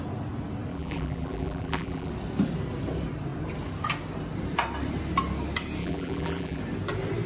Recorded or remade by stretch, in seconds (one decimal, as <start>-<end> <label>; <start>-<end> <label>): 0.0-0.7 recorded; 0.7-2.1 remade; 2.1-5.8 recorded; 5.8-6.6 remade; 6.6-7.3 recorded